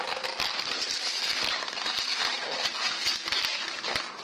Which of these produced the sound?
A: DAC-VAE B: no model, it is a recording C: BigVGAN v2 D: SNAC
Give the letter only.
B